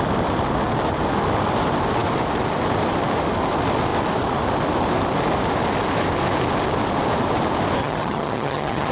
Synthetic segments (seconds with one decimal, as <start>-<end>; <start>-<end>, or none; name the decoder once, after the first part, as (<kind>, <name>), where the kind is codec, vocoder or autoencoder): 7.8-8.9 (vocoder, HiFi-GAN)